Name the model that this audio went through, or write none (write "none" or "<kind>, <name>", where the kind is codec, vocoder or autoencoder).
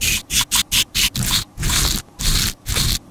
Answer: none